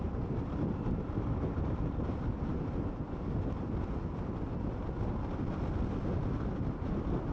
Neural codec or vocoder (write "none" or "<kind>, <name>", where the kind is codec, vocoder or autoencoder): none